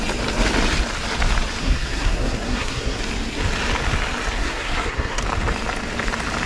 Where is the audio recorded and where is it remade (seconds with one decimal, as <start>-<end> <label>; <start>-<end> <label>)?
0.0-1.6 recorded; 1.6-3.0 remade; 3.0-4.4 recorded; 4.4-5.2 remade; 5.2-6.5 recorded

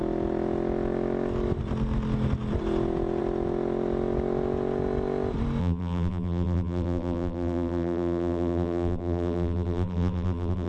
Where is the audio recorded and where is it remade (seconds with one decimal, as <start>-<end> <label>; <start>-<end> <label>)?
0.0-5.6 recorded; 5.6-10.7 remade

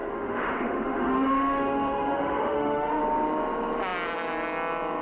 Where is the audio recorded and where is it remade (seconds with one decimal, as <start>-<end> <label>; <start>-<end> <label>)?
0.0-3.0 remade; 3.0-5.0 recorded

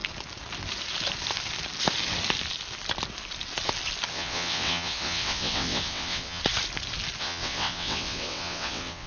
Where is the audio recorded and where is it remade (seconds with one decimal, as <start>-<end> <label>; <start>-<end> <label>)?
0.0-4.1 recorded; 4.1-6.4 remade; 6.4-7.2 recorded; 7.2-9.1 remade

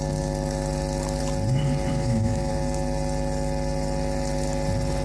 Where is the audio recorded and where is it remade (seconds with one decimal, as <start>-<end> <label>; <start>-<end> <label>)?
0.0-1.9 recorded; 1.9-2.5 remade; 2.5-5.0 recorded

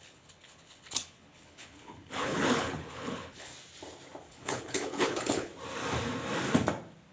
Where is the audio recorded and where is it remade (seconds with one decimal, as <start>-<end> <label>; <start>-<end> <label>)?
0.0-3.5 remade; 3.5-4.3 recorded; 4.3-5.5 remade; 5.5-7.1 recorded

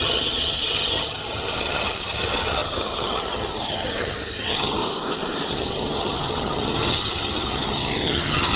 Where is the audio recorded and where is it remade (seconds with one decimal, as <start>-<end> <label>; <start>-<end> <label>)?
0.0-4.8 remade; 4.8-5.5 recorded; 5.5-8.6 remade